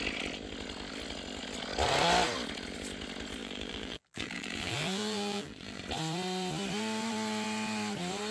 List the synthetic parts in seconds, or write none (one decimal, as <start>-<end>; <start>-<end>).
3.4-5.8